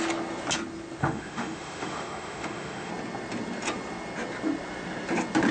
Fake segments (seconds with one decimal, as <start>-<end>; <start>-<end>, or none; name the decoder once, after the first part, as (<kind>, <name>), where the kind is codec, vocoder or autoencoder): 1.0-2.9 (autoencoder, DAC-VAE)